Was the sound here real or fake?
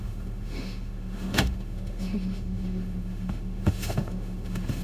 fake